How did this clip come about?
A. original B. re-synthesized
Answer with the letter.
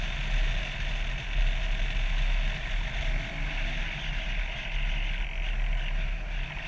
A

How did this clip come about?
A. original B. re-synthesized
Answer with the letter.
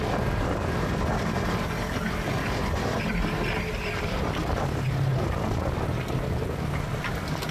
B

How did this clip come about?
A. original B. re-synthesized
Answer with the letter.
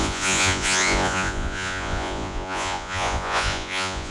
B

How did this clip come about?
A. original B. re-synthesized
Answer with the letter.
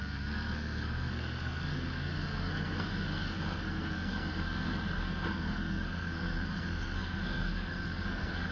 B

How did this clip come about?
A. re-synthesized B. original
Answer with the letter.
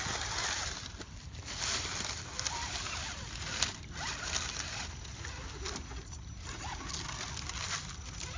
B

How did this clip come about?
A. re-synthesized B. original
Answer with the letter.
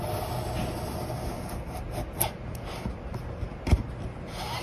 B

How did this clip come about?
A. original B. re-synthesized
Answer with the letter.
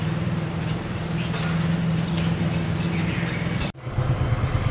A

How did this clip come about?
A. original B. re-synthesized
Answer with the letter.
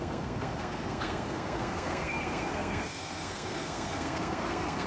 B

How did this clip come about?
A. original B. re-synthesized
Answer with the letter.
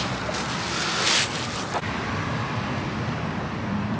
A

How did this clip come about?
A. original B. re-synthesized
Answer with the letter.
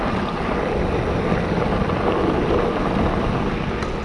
A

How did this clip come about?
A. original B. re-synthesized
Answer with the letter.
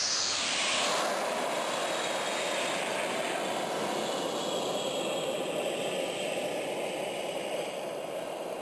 A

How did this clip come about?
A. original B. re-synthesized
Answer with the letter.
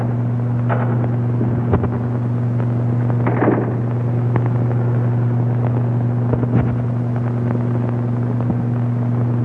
A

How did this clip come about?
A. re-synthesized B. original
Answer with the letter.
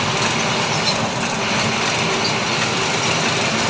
B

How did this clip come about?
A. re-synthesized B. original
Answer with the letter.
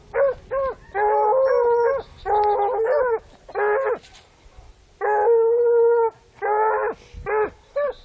B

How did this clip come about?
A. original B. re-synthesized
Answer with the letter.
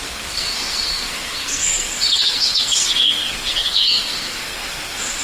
B